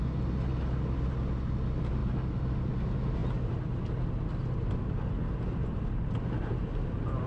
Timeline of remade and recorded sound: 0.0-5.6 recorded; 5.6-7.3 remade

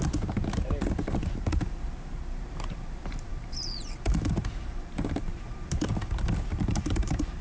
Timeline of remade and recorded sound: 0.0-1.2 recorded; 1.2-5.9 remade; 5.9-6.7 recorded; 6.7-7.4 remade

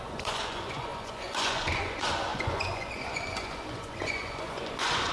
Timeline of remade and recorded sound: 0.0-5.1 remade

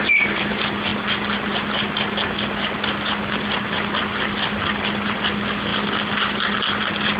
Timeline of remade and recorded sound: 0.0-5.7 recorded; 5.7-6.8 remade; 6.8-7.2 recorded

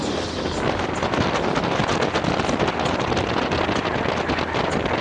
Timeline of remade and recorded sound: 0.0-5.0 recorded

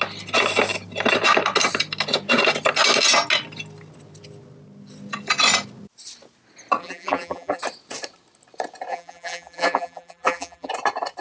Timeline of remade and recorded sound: 0.0-6.8 recorded; 6.8-7.6 remade; 7.6-8.9 recorded; 8.9-10.7 remade; 10.7-11.2 recorded

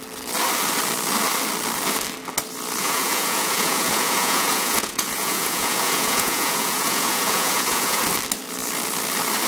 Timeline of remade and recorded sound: 0.0-2.8 recorded; 2.8-8.0 remade; 8.0-9.5 recorded

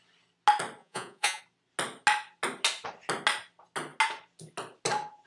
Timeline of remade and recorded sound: 0.0-0.8 recorded; 0.8-1.4 remade; 1.4-5.3 recorded